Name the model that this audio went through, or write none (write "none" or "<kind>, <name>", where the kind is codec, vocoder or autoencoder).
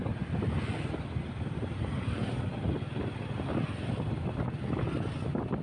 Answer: none